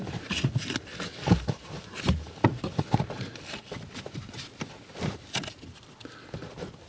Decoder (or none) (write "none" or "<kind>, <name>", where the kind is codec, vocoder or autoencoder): none